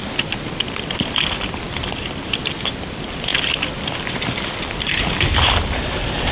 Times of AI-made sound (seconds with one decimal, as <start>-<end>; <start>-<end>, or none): 0.0-3.3; 4.9-6.3